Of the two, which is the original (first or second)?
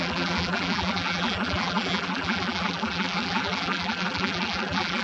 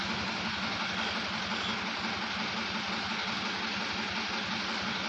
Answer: second